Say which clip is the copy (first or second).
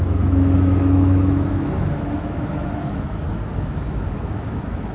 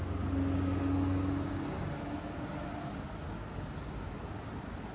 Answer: first